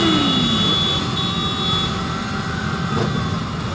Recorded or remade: recorded